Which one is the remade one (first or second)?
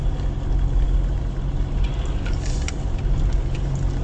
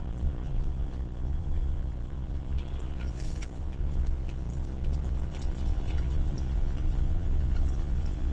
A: second